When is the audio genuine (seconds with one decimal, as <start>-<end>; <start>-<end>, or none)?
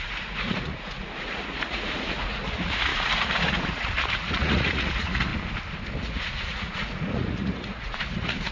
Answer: 5.3-6.0